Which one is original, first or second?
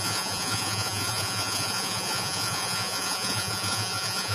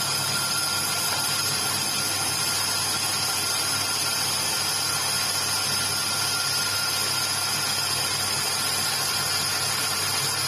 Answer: second